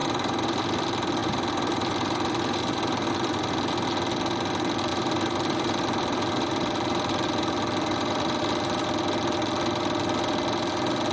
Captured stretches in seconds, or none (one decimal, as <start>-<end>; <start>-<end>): 0.6-1.2; 3.1-4.9; 8.5-11.1